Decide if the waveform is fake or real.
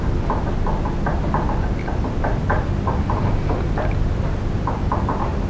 real